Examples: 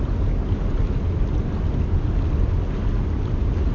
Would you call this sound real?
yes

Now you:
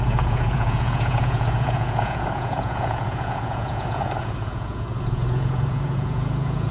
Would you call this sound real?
no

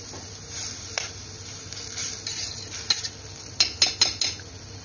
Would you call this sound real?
yes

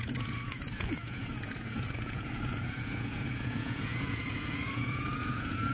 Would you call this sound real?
no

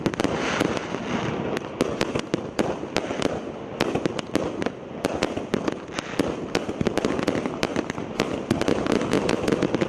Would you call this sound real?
yes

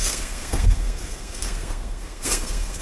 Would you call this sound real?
no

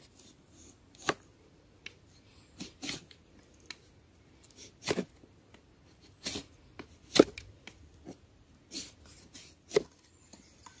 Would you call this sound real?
yes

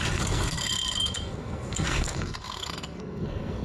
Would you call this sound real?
no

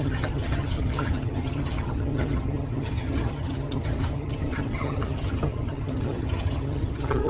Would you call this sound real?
no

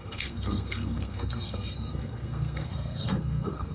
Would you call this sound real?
no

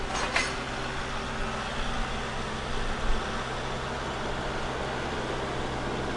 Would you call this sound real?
yes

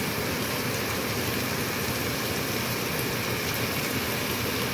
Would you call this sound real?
yes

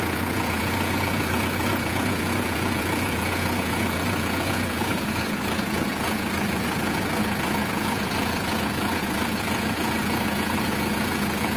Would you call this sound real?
no